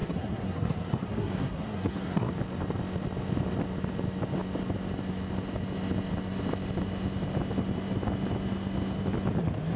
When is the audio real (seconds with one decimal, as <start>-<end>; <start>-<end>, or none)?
2.3-9.8